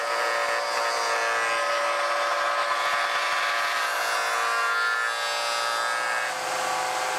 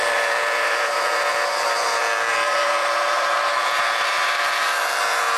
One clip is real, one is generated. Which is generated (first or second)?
second